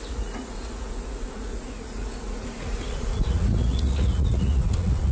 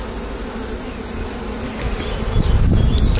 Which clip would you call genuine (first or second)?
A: second